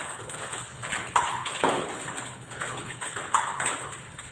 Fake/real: fake